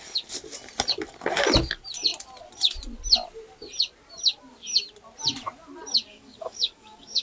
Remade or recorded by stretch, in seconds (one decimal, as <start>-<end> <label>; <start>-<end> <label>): 0.0-6.1 recorded; 6.1-7.2 remade